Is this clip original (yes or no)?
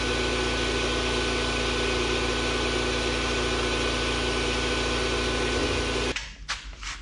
yes